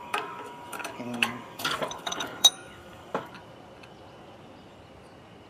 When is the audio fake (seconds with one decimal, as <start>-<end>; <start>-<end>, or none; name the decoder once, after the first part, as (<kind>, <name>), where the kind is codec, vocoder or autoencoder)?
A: 0.0-3.3 (codec, DAC)